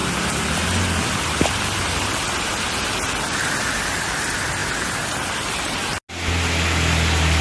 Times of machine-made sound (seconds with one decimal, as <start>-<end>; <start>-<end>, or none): none